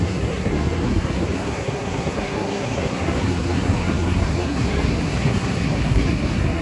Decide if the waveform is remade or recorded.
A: remade